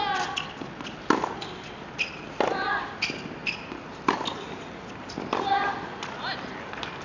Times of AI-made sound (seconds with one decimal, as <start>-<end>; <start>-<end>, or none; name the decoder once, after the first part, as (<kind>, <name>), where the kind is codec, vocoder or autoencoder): none

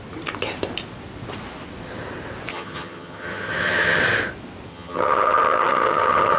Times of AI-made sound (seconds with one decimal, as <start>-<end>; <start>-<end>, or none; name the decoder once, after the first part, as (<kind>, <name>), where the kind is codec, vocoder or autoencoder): 2.5-4.0 (vocoder, HiFi-GAN); 4.7-6.4

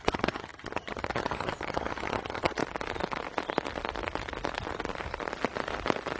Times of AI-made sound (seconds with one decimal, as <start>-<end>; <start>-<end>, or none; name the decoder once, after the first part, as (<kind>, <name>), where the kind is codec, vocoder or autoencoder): 0.0-2.6 (vocoder, HiFi-GAN)

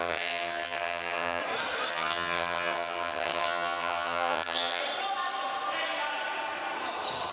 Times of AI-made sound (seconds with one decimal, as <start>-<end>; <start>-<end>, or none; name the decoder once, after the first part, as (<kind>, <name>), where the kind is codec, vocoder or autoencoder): 0.0-1.4 (vocoder, HiFi-GAN); 1.9-4.8

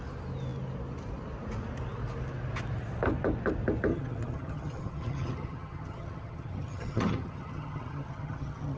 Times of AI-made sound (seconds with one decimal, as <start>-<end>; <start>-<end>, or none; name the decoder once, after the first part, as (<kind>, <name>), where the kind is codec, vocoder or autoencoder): 3.9-8.8 (vocoder, HiFi-GAN)

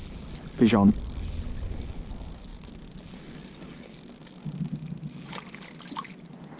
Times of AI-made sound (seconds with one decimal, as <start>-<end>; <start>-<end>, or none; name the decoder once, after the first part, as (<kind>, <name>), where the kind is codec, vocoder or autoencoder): none

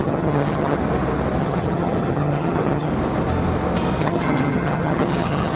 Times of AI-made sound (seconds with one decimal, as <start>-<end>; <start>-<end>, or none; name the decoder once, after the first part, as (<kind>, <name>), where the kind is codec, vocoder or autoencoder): 0.0-0.8 (vocoder, HiFi-GAN); 1.4-2.9; 4.0-5.6